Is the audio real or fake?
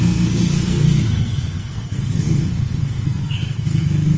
fake